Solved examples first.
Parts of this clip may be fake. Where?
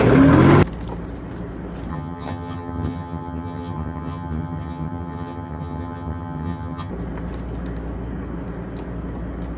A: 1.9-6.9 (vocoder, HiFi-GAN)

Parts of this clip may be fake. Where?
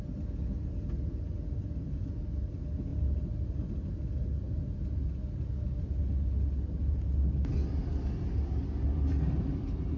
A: none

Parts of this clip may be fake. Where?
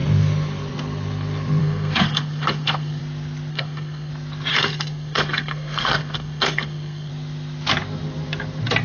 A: 1.6-3.0 (codec, SNAC); 3.5-4.1; 4.5-7.1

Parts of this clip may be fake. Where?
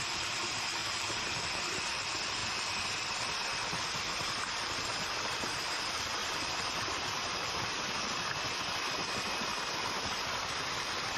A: 0.8-1.4 (vocoder, BigVGAN v2); 6.2-7.9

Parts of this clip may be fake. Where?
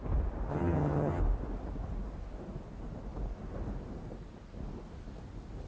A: 0.5-1.2 (vocoder, HiFi-GAN)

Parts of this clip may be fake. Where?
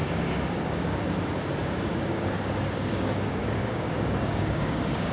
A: 0.0-1.0 (codec, DAC); 1.6-5.1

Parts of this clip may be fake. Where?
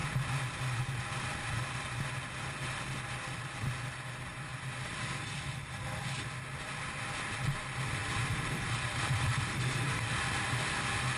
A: 4.5-6.2 (vocoder, BigVGAN v2); 8.0-10.1